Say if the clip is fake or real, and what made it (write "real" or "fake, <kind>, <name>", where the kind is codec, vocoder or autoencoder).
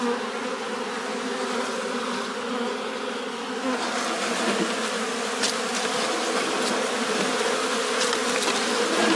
real